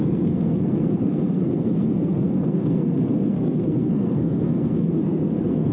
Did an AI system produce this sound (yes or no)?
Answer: yes